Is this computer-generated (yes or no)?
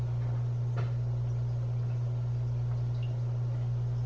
no